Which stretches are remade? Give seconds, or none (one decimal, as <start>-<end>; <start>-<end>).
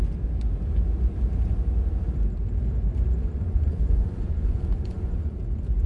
3.2-5.4